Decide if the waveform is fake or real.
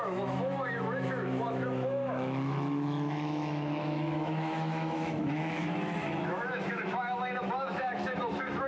fake